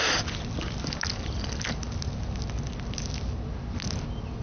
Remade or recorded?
recorded